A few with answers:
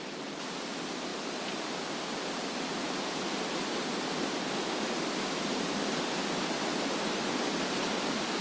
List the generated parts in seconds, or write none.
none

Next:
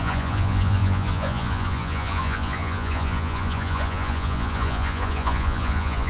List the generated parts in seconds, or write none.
0.0-6.1

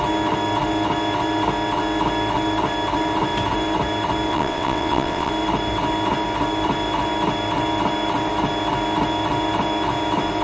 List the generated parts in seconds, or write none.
4.3-5.3

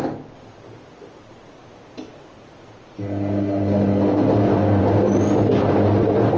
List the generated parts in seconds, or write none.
none

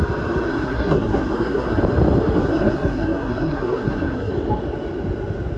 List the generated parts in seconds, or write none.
0.5-1.8; 2.4-4.3

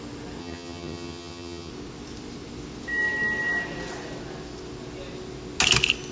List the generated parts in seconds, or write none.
0.4-1.7